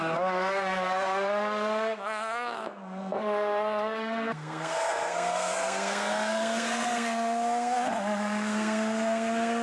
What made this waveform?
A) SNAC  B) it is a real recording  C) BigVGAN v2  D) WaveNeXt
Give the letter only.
A